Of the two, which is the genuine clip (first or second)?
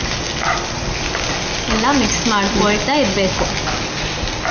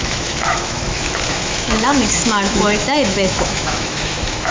first